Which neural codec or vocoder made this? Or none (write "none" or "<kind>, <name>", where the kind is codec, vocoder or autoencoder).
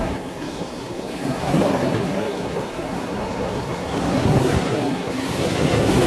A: codec, SNAC